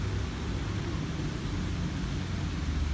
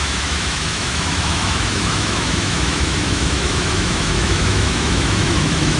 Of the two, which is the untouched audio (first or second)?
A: first